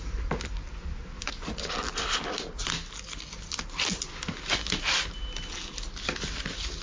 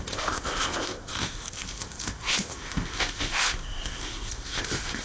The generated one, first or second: second